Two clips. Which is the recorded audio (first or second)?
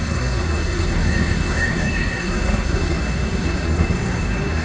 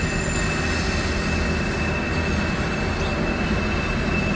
second